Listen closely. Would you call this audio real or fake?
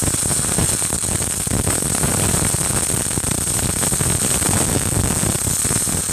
real